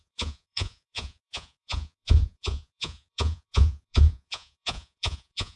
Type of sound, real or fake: fake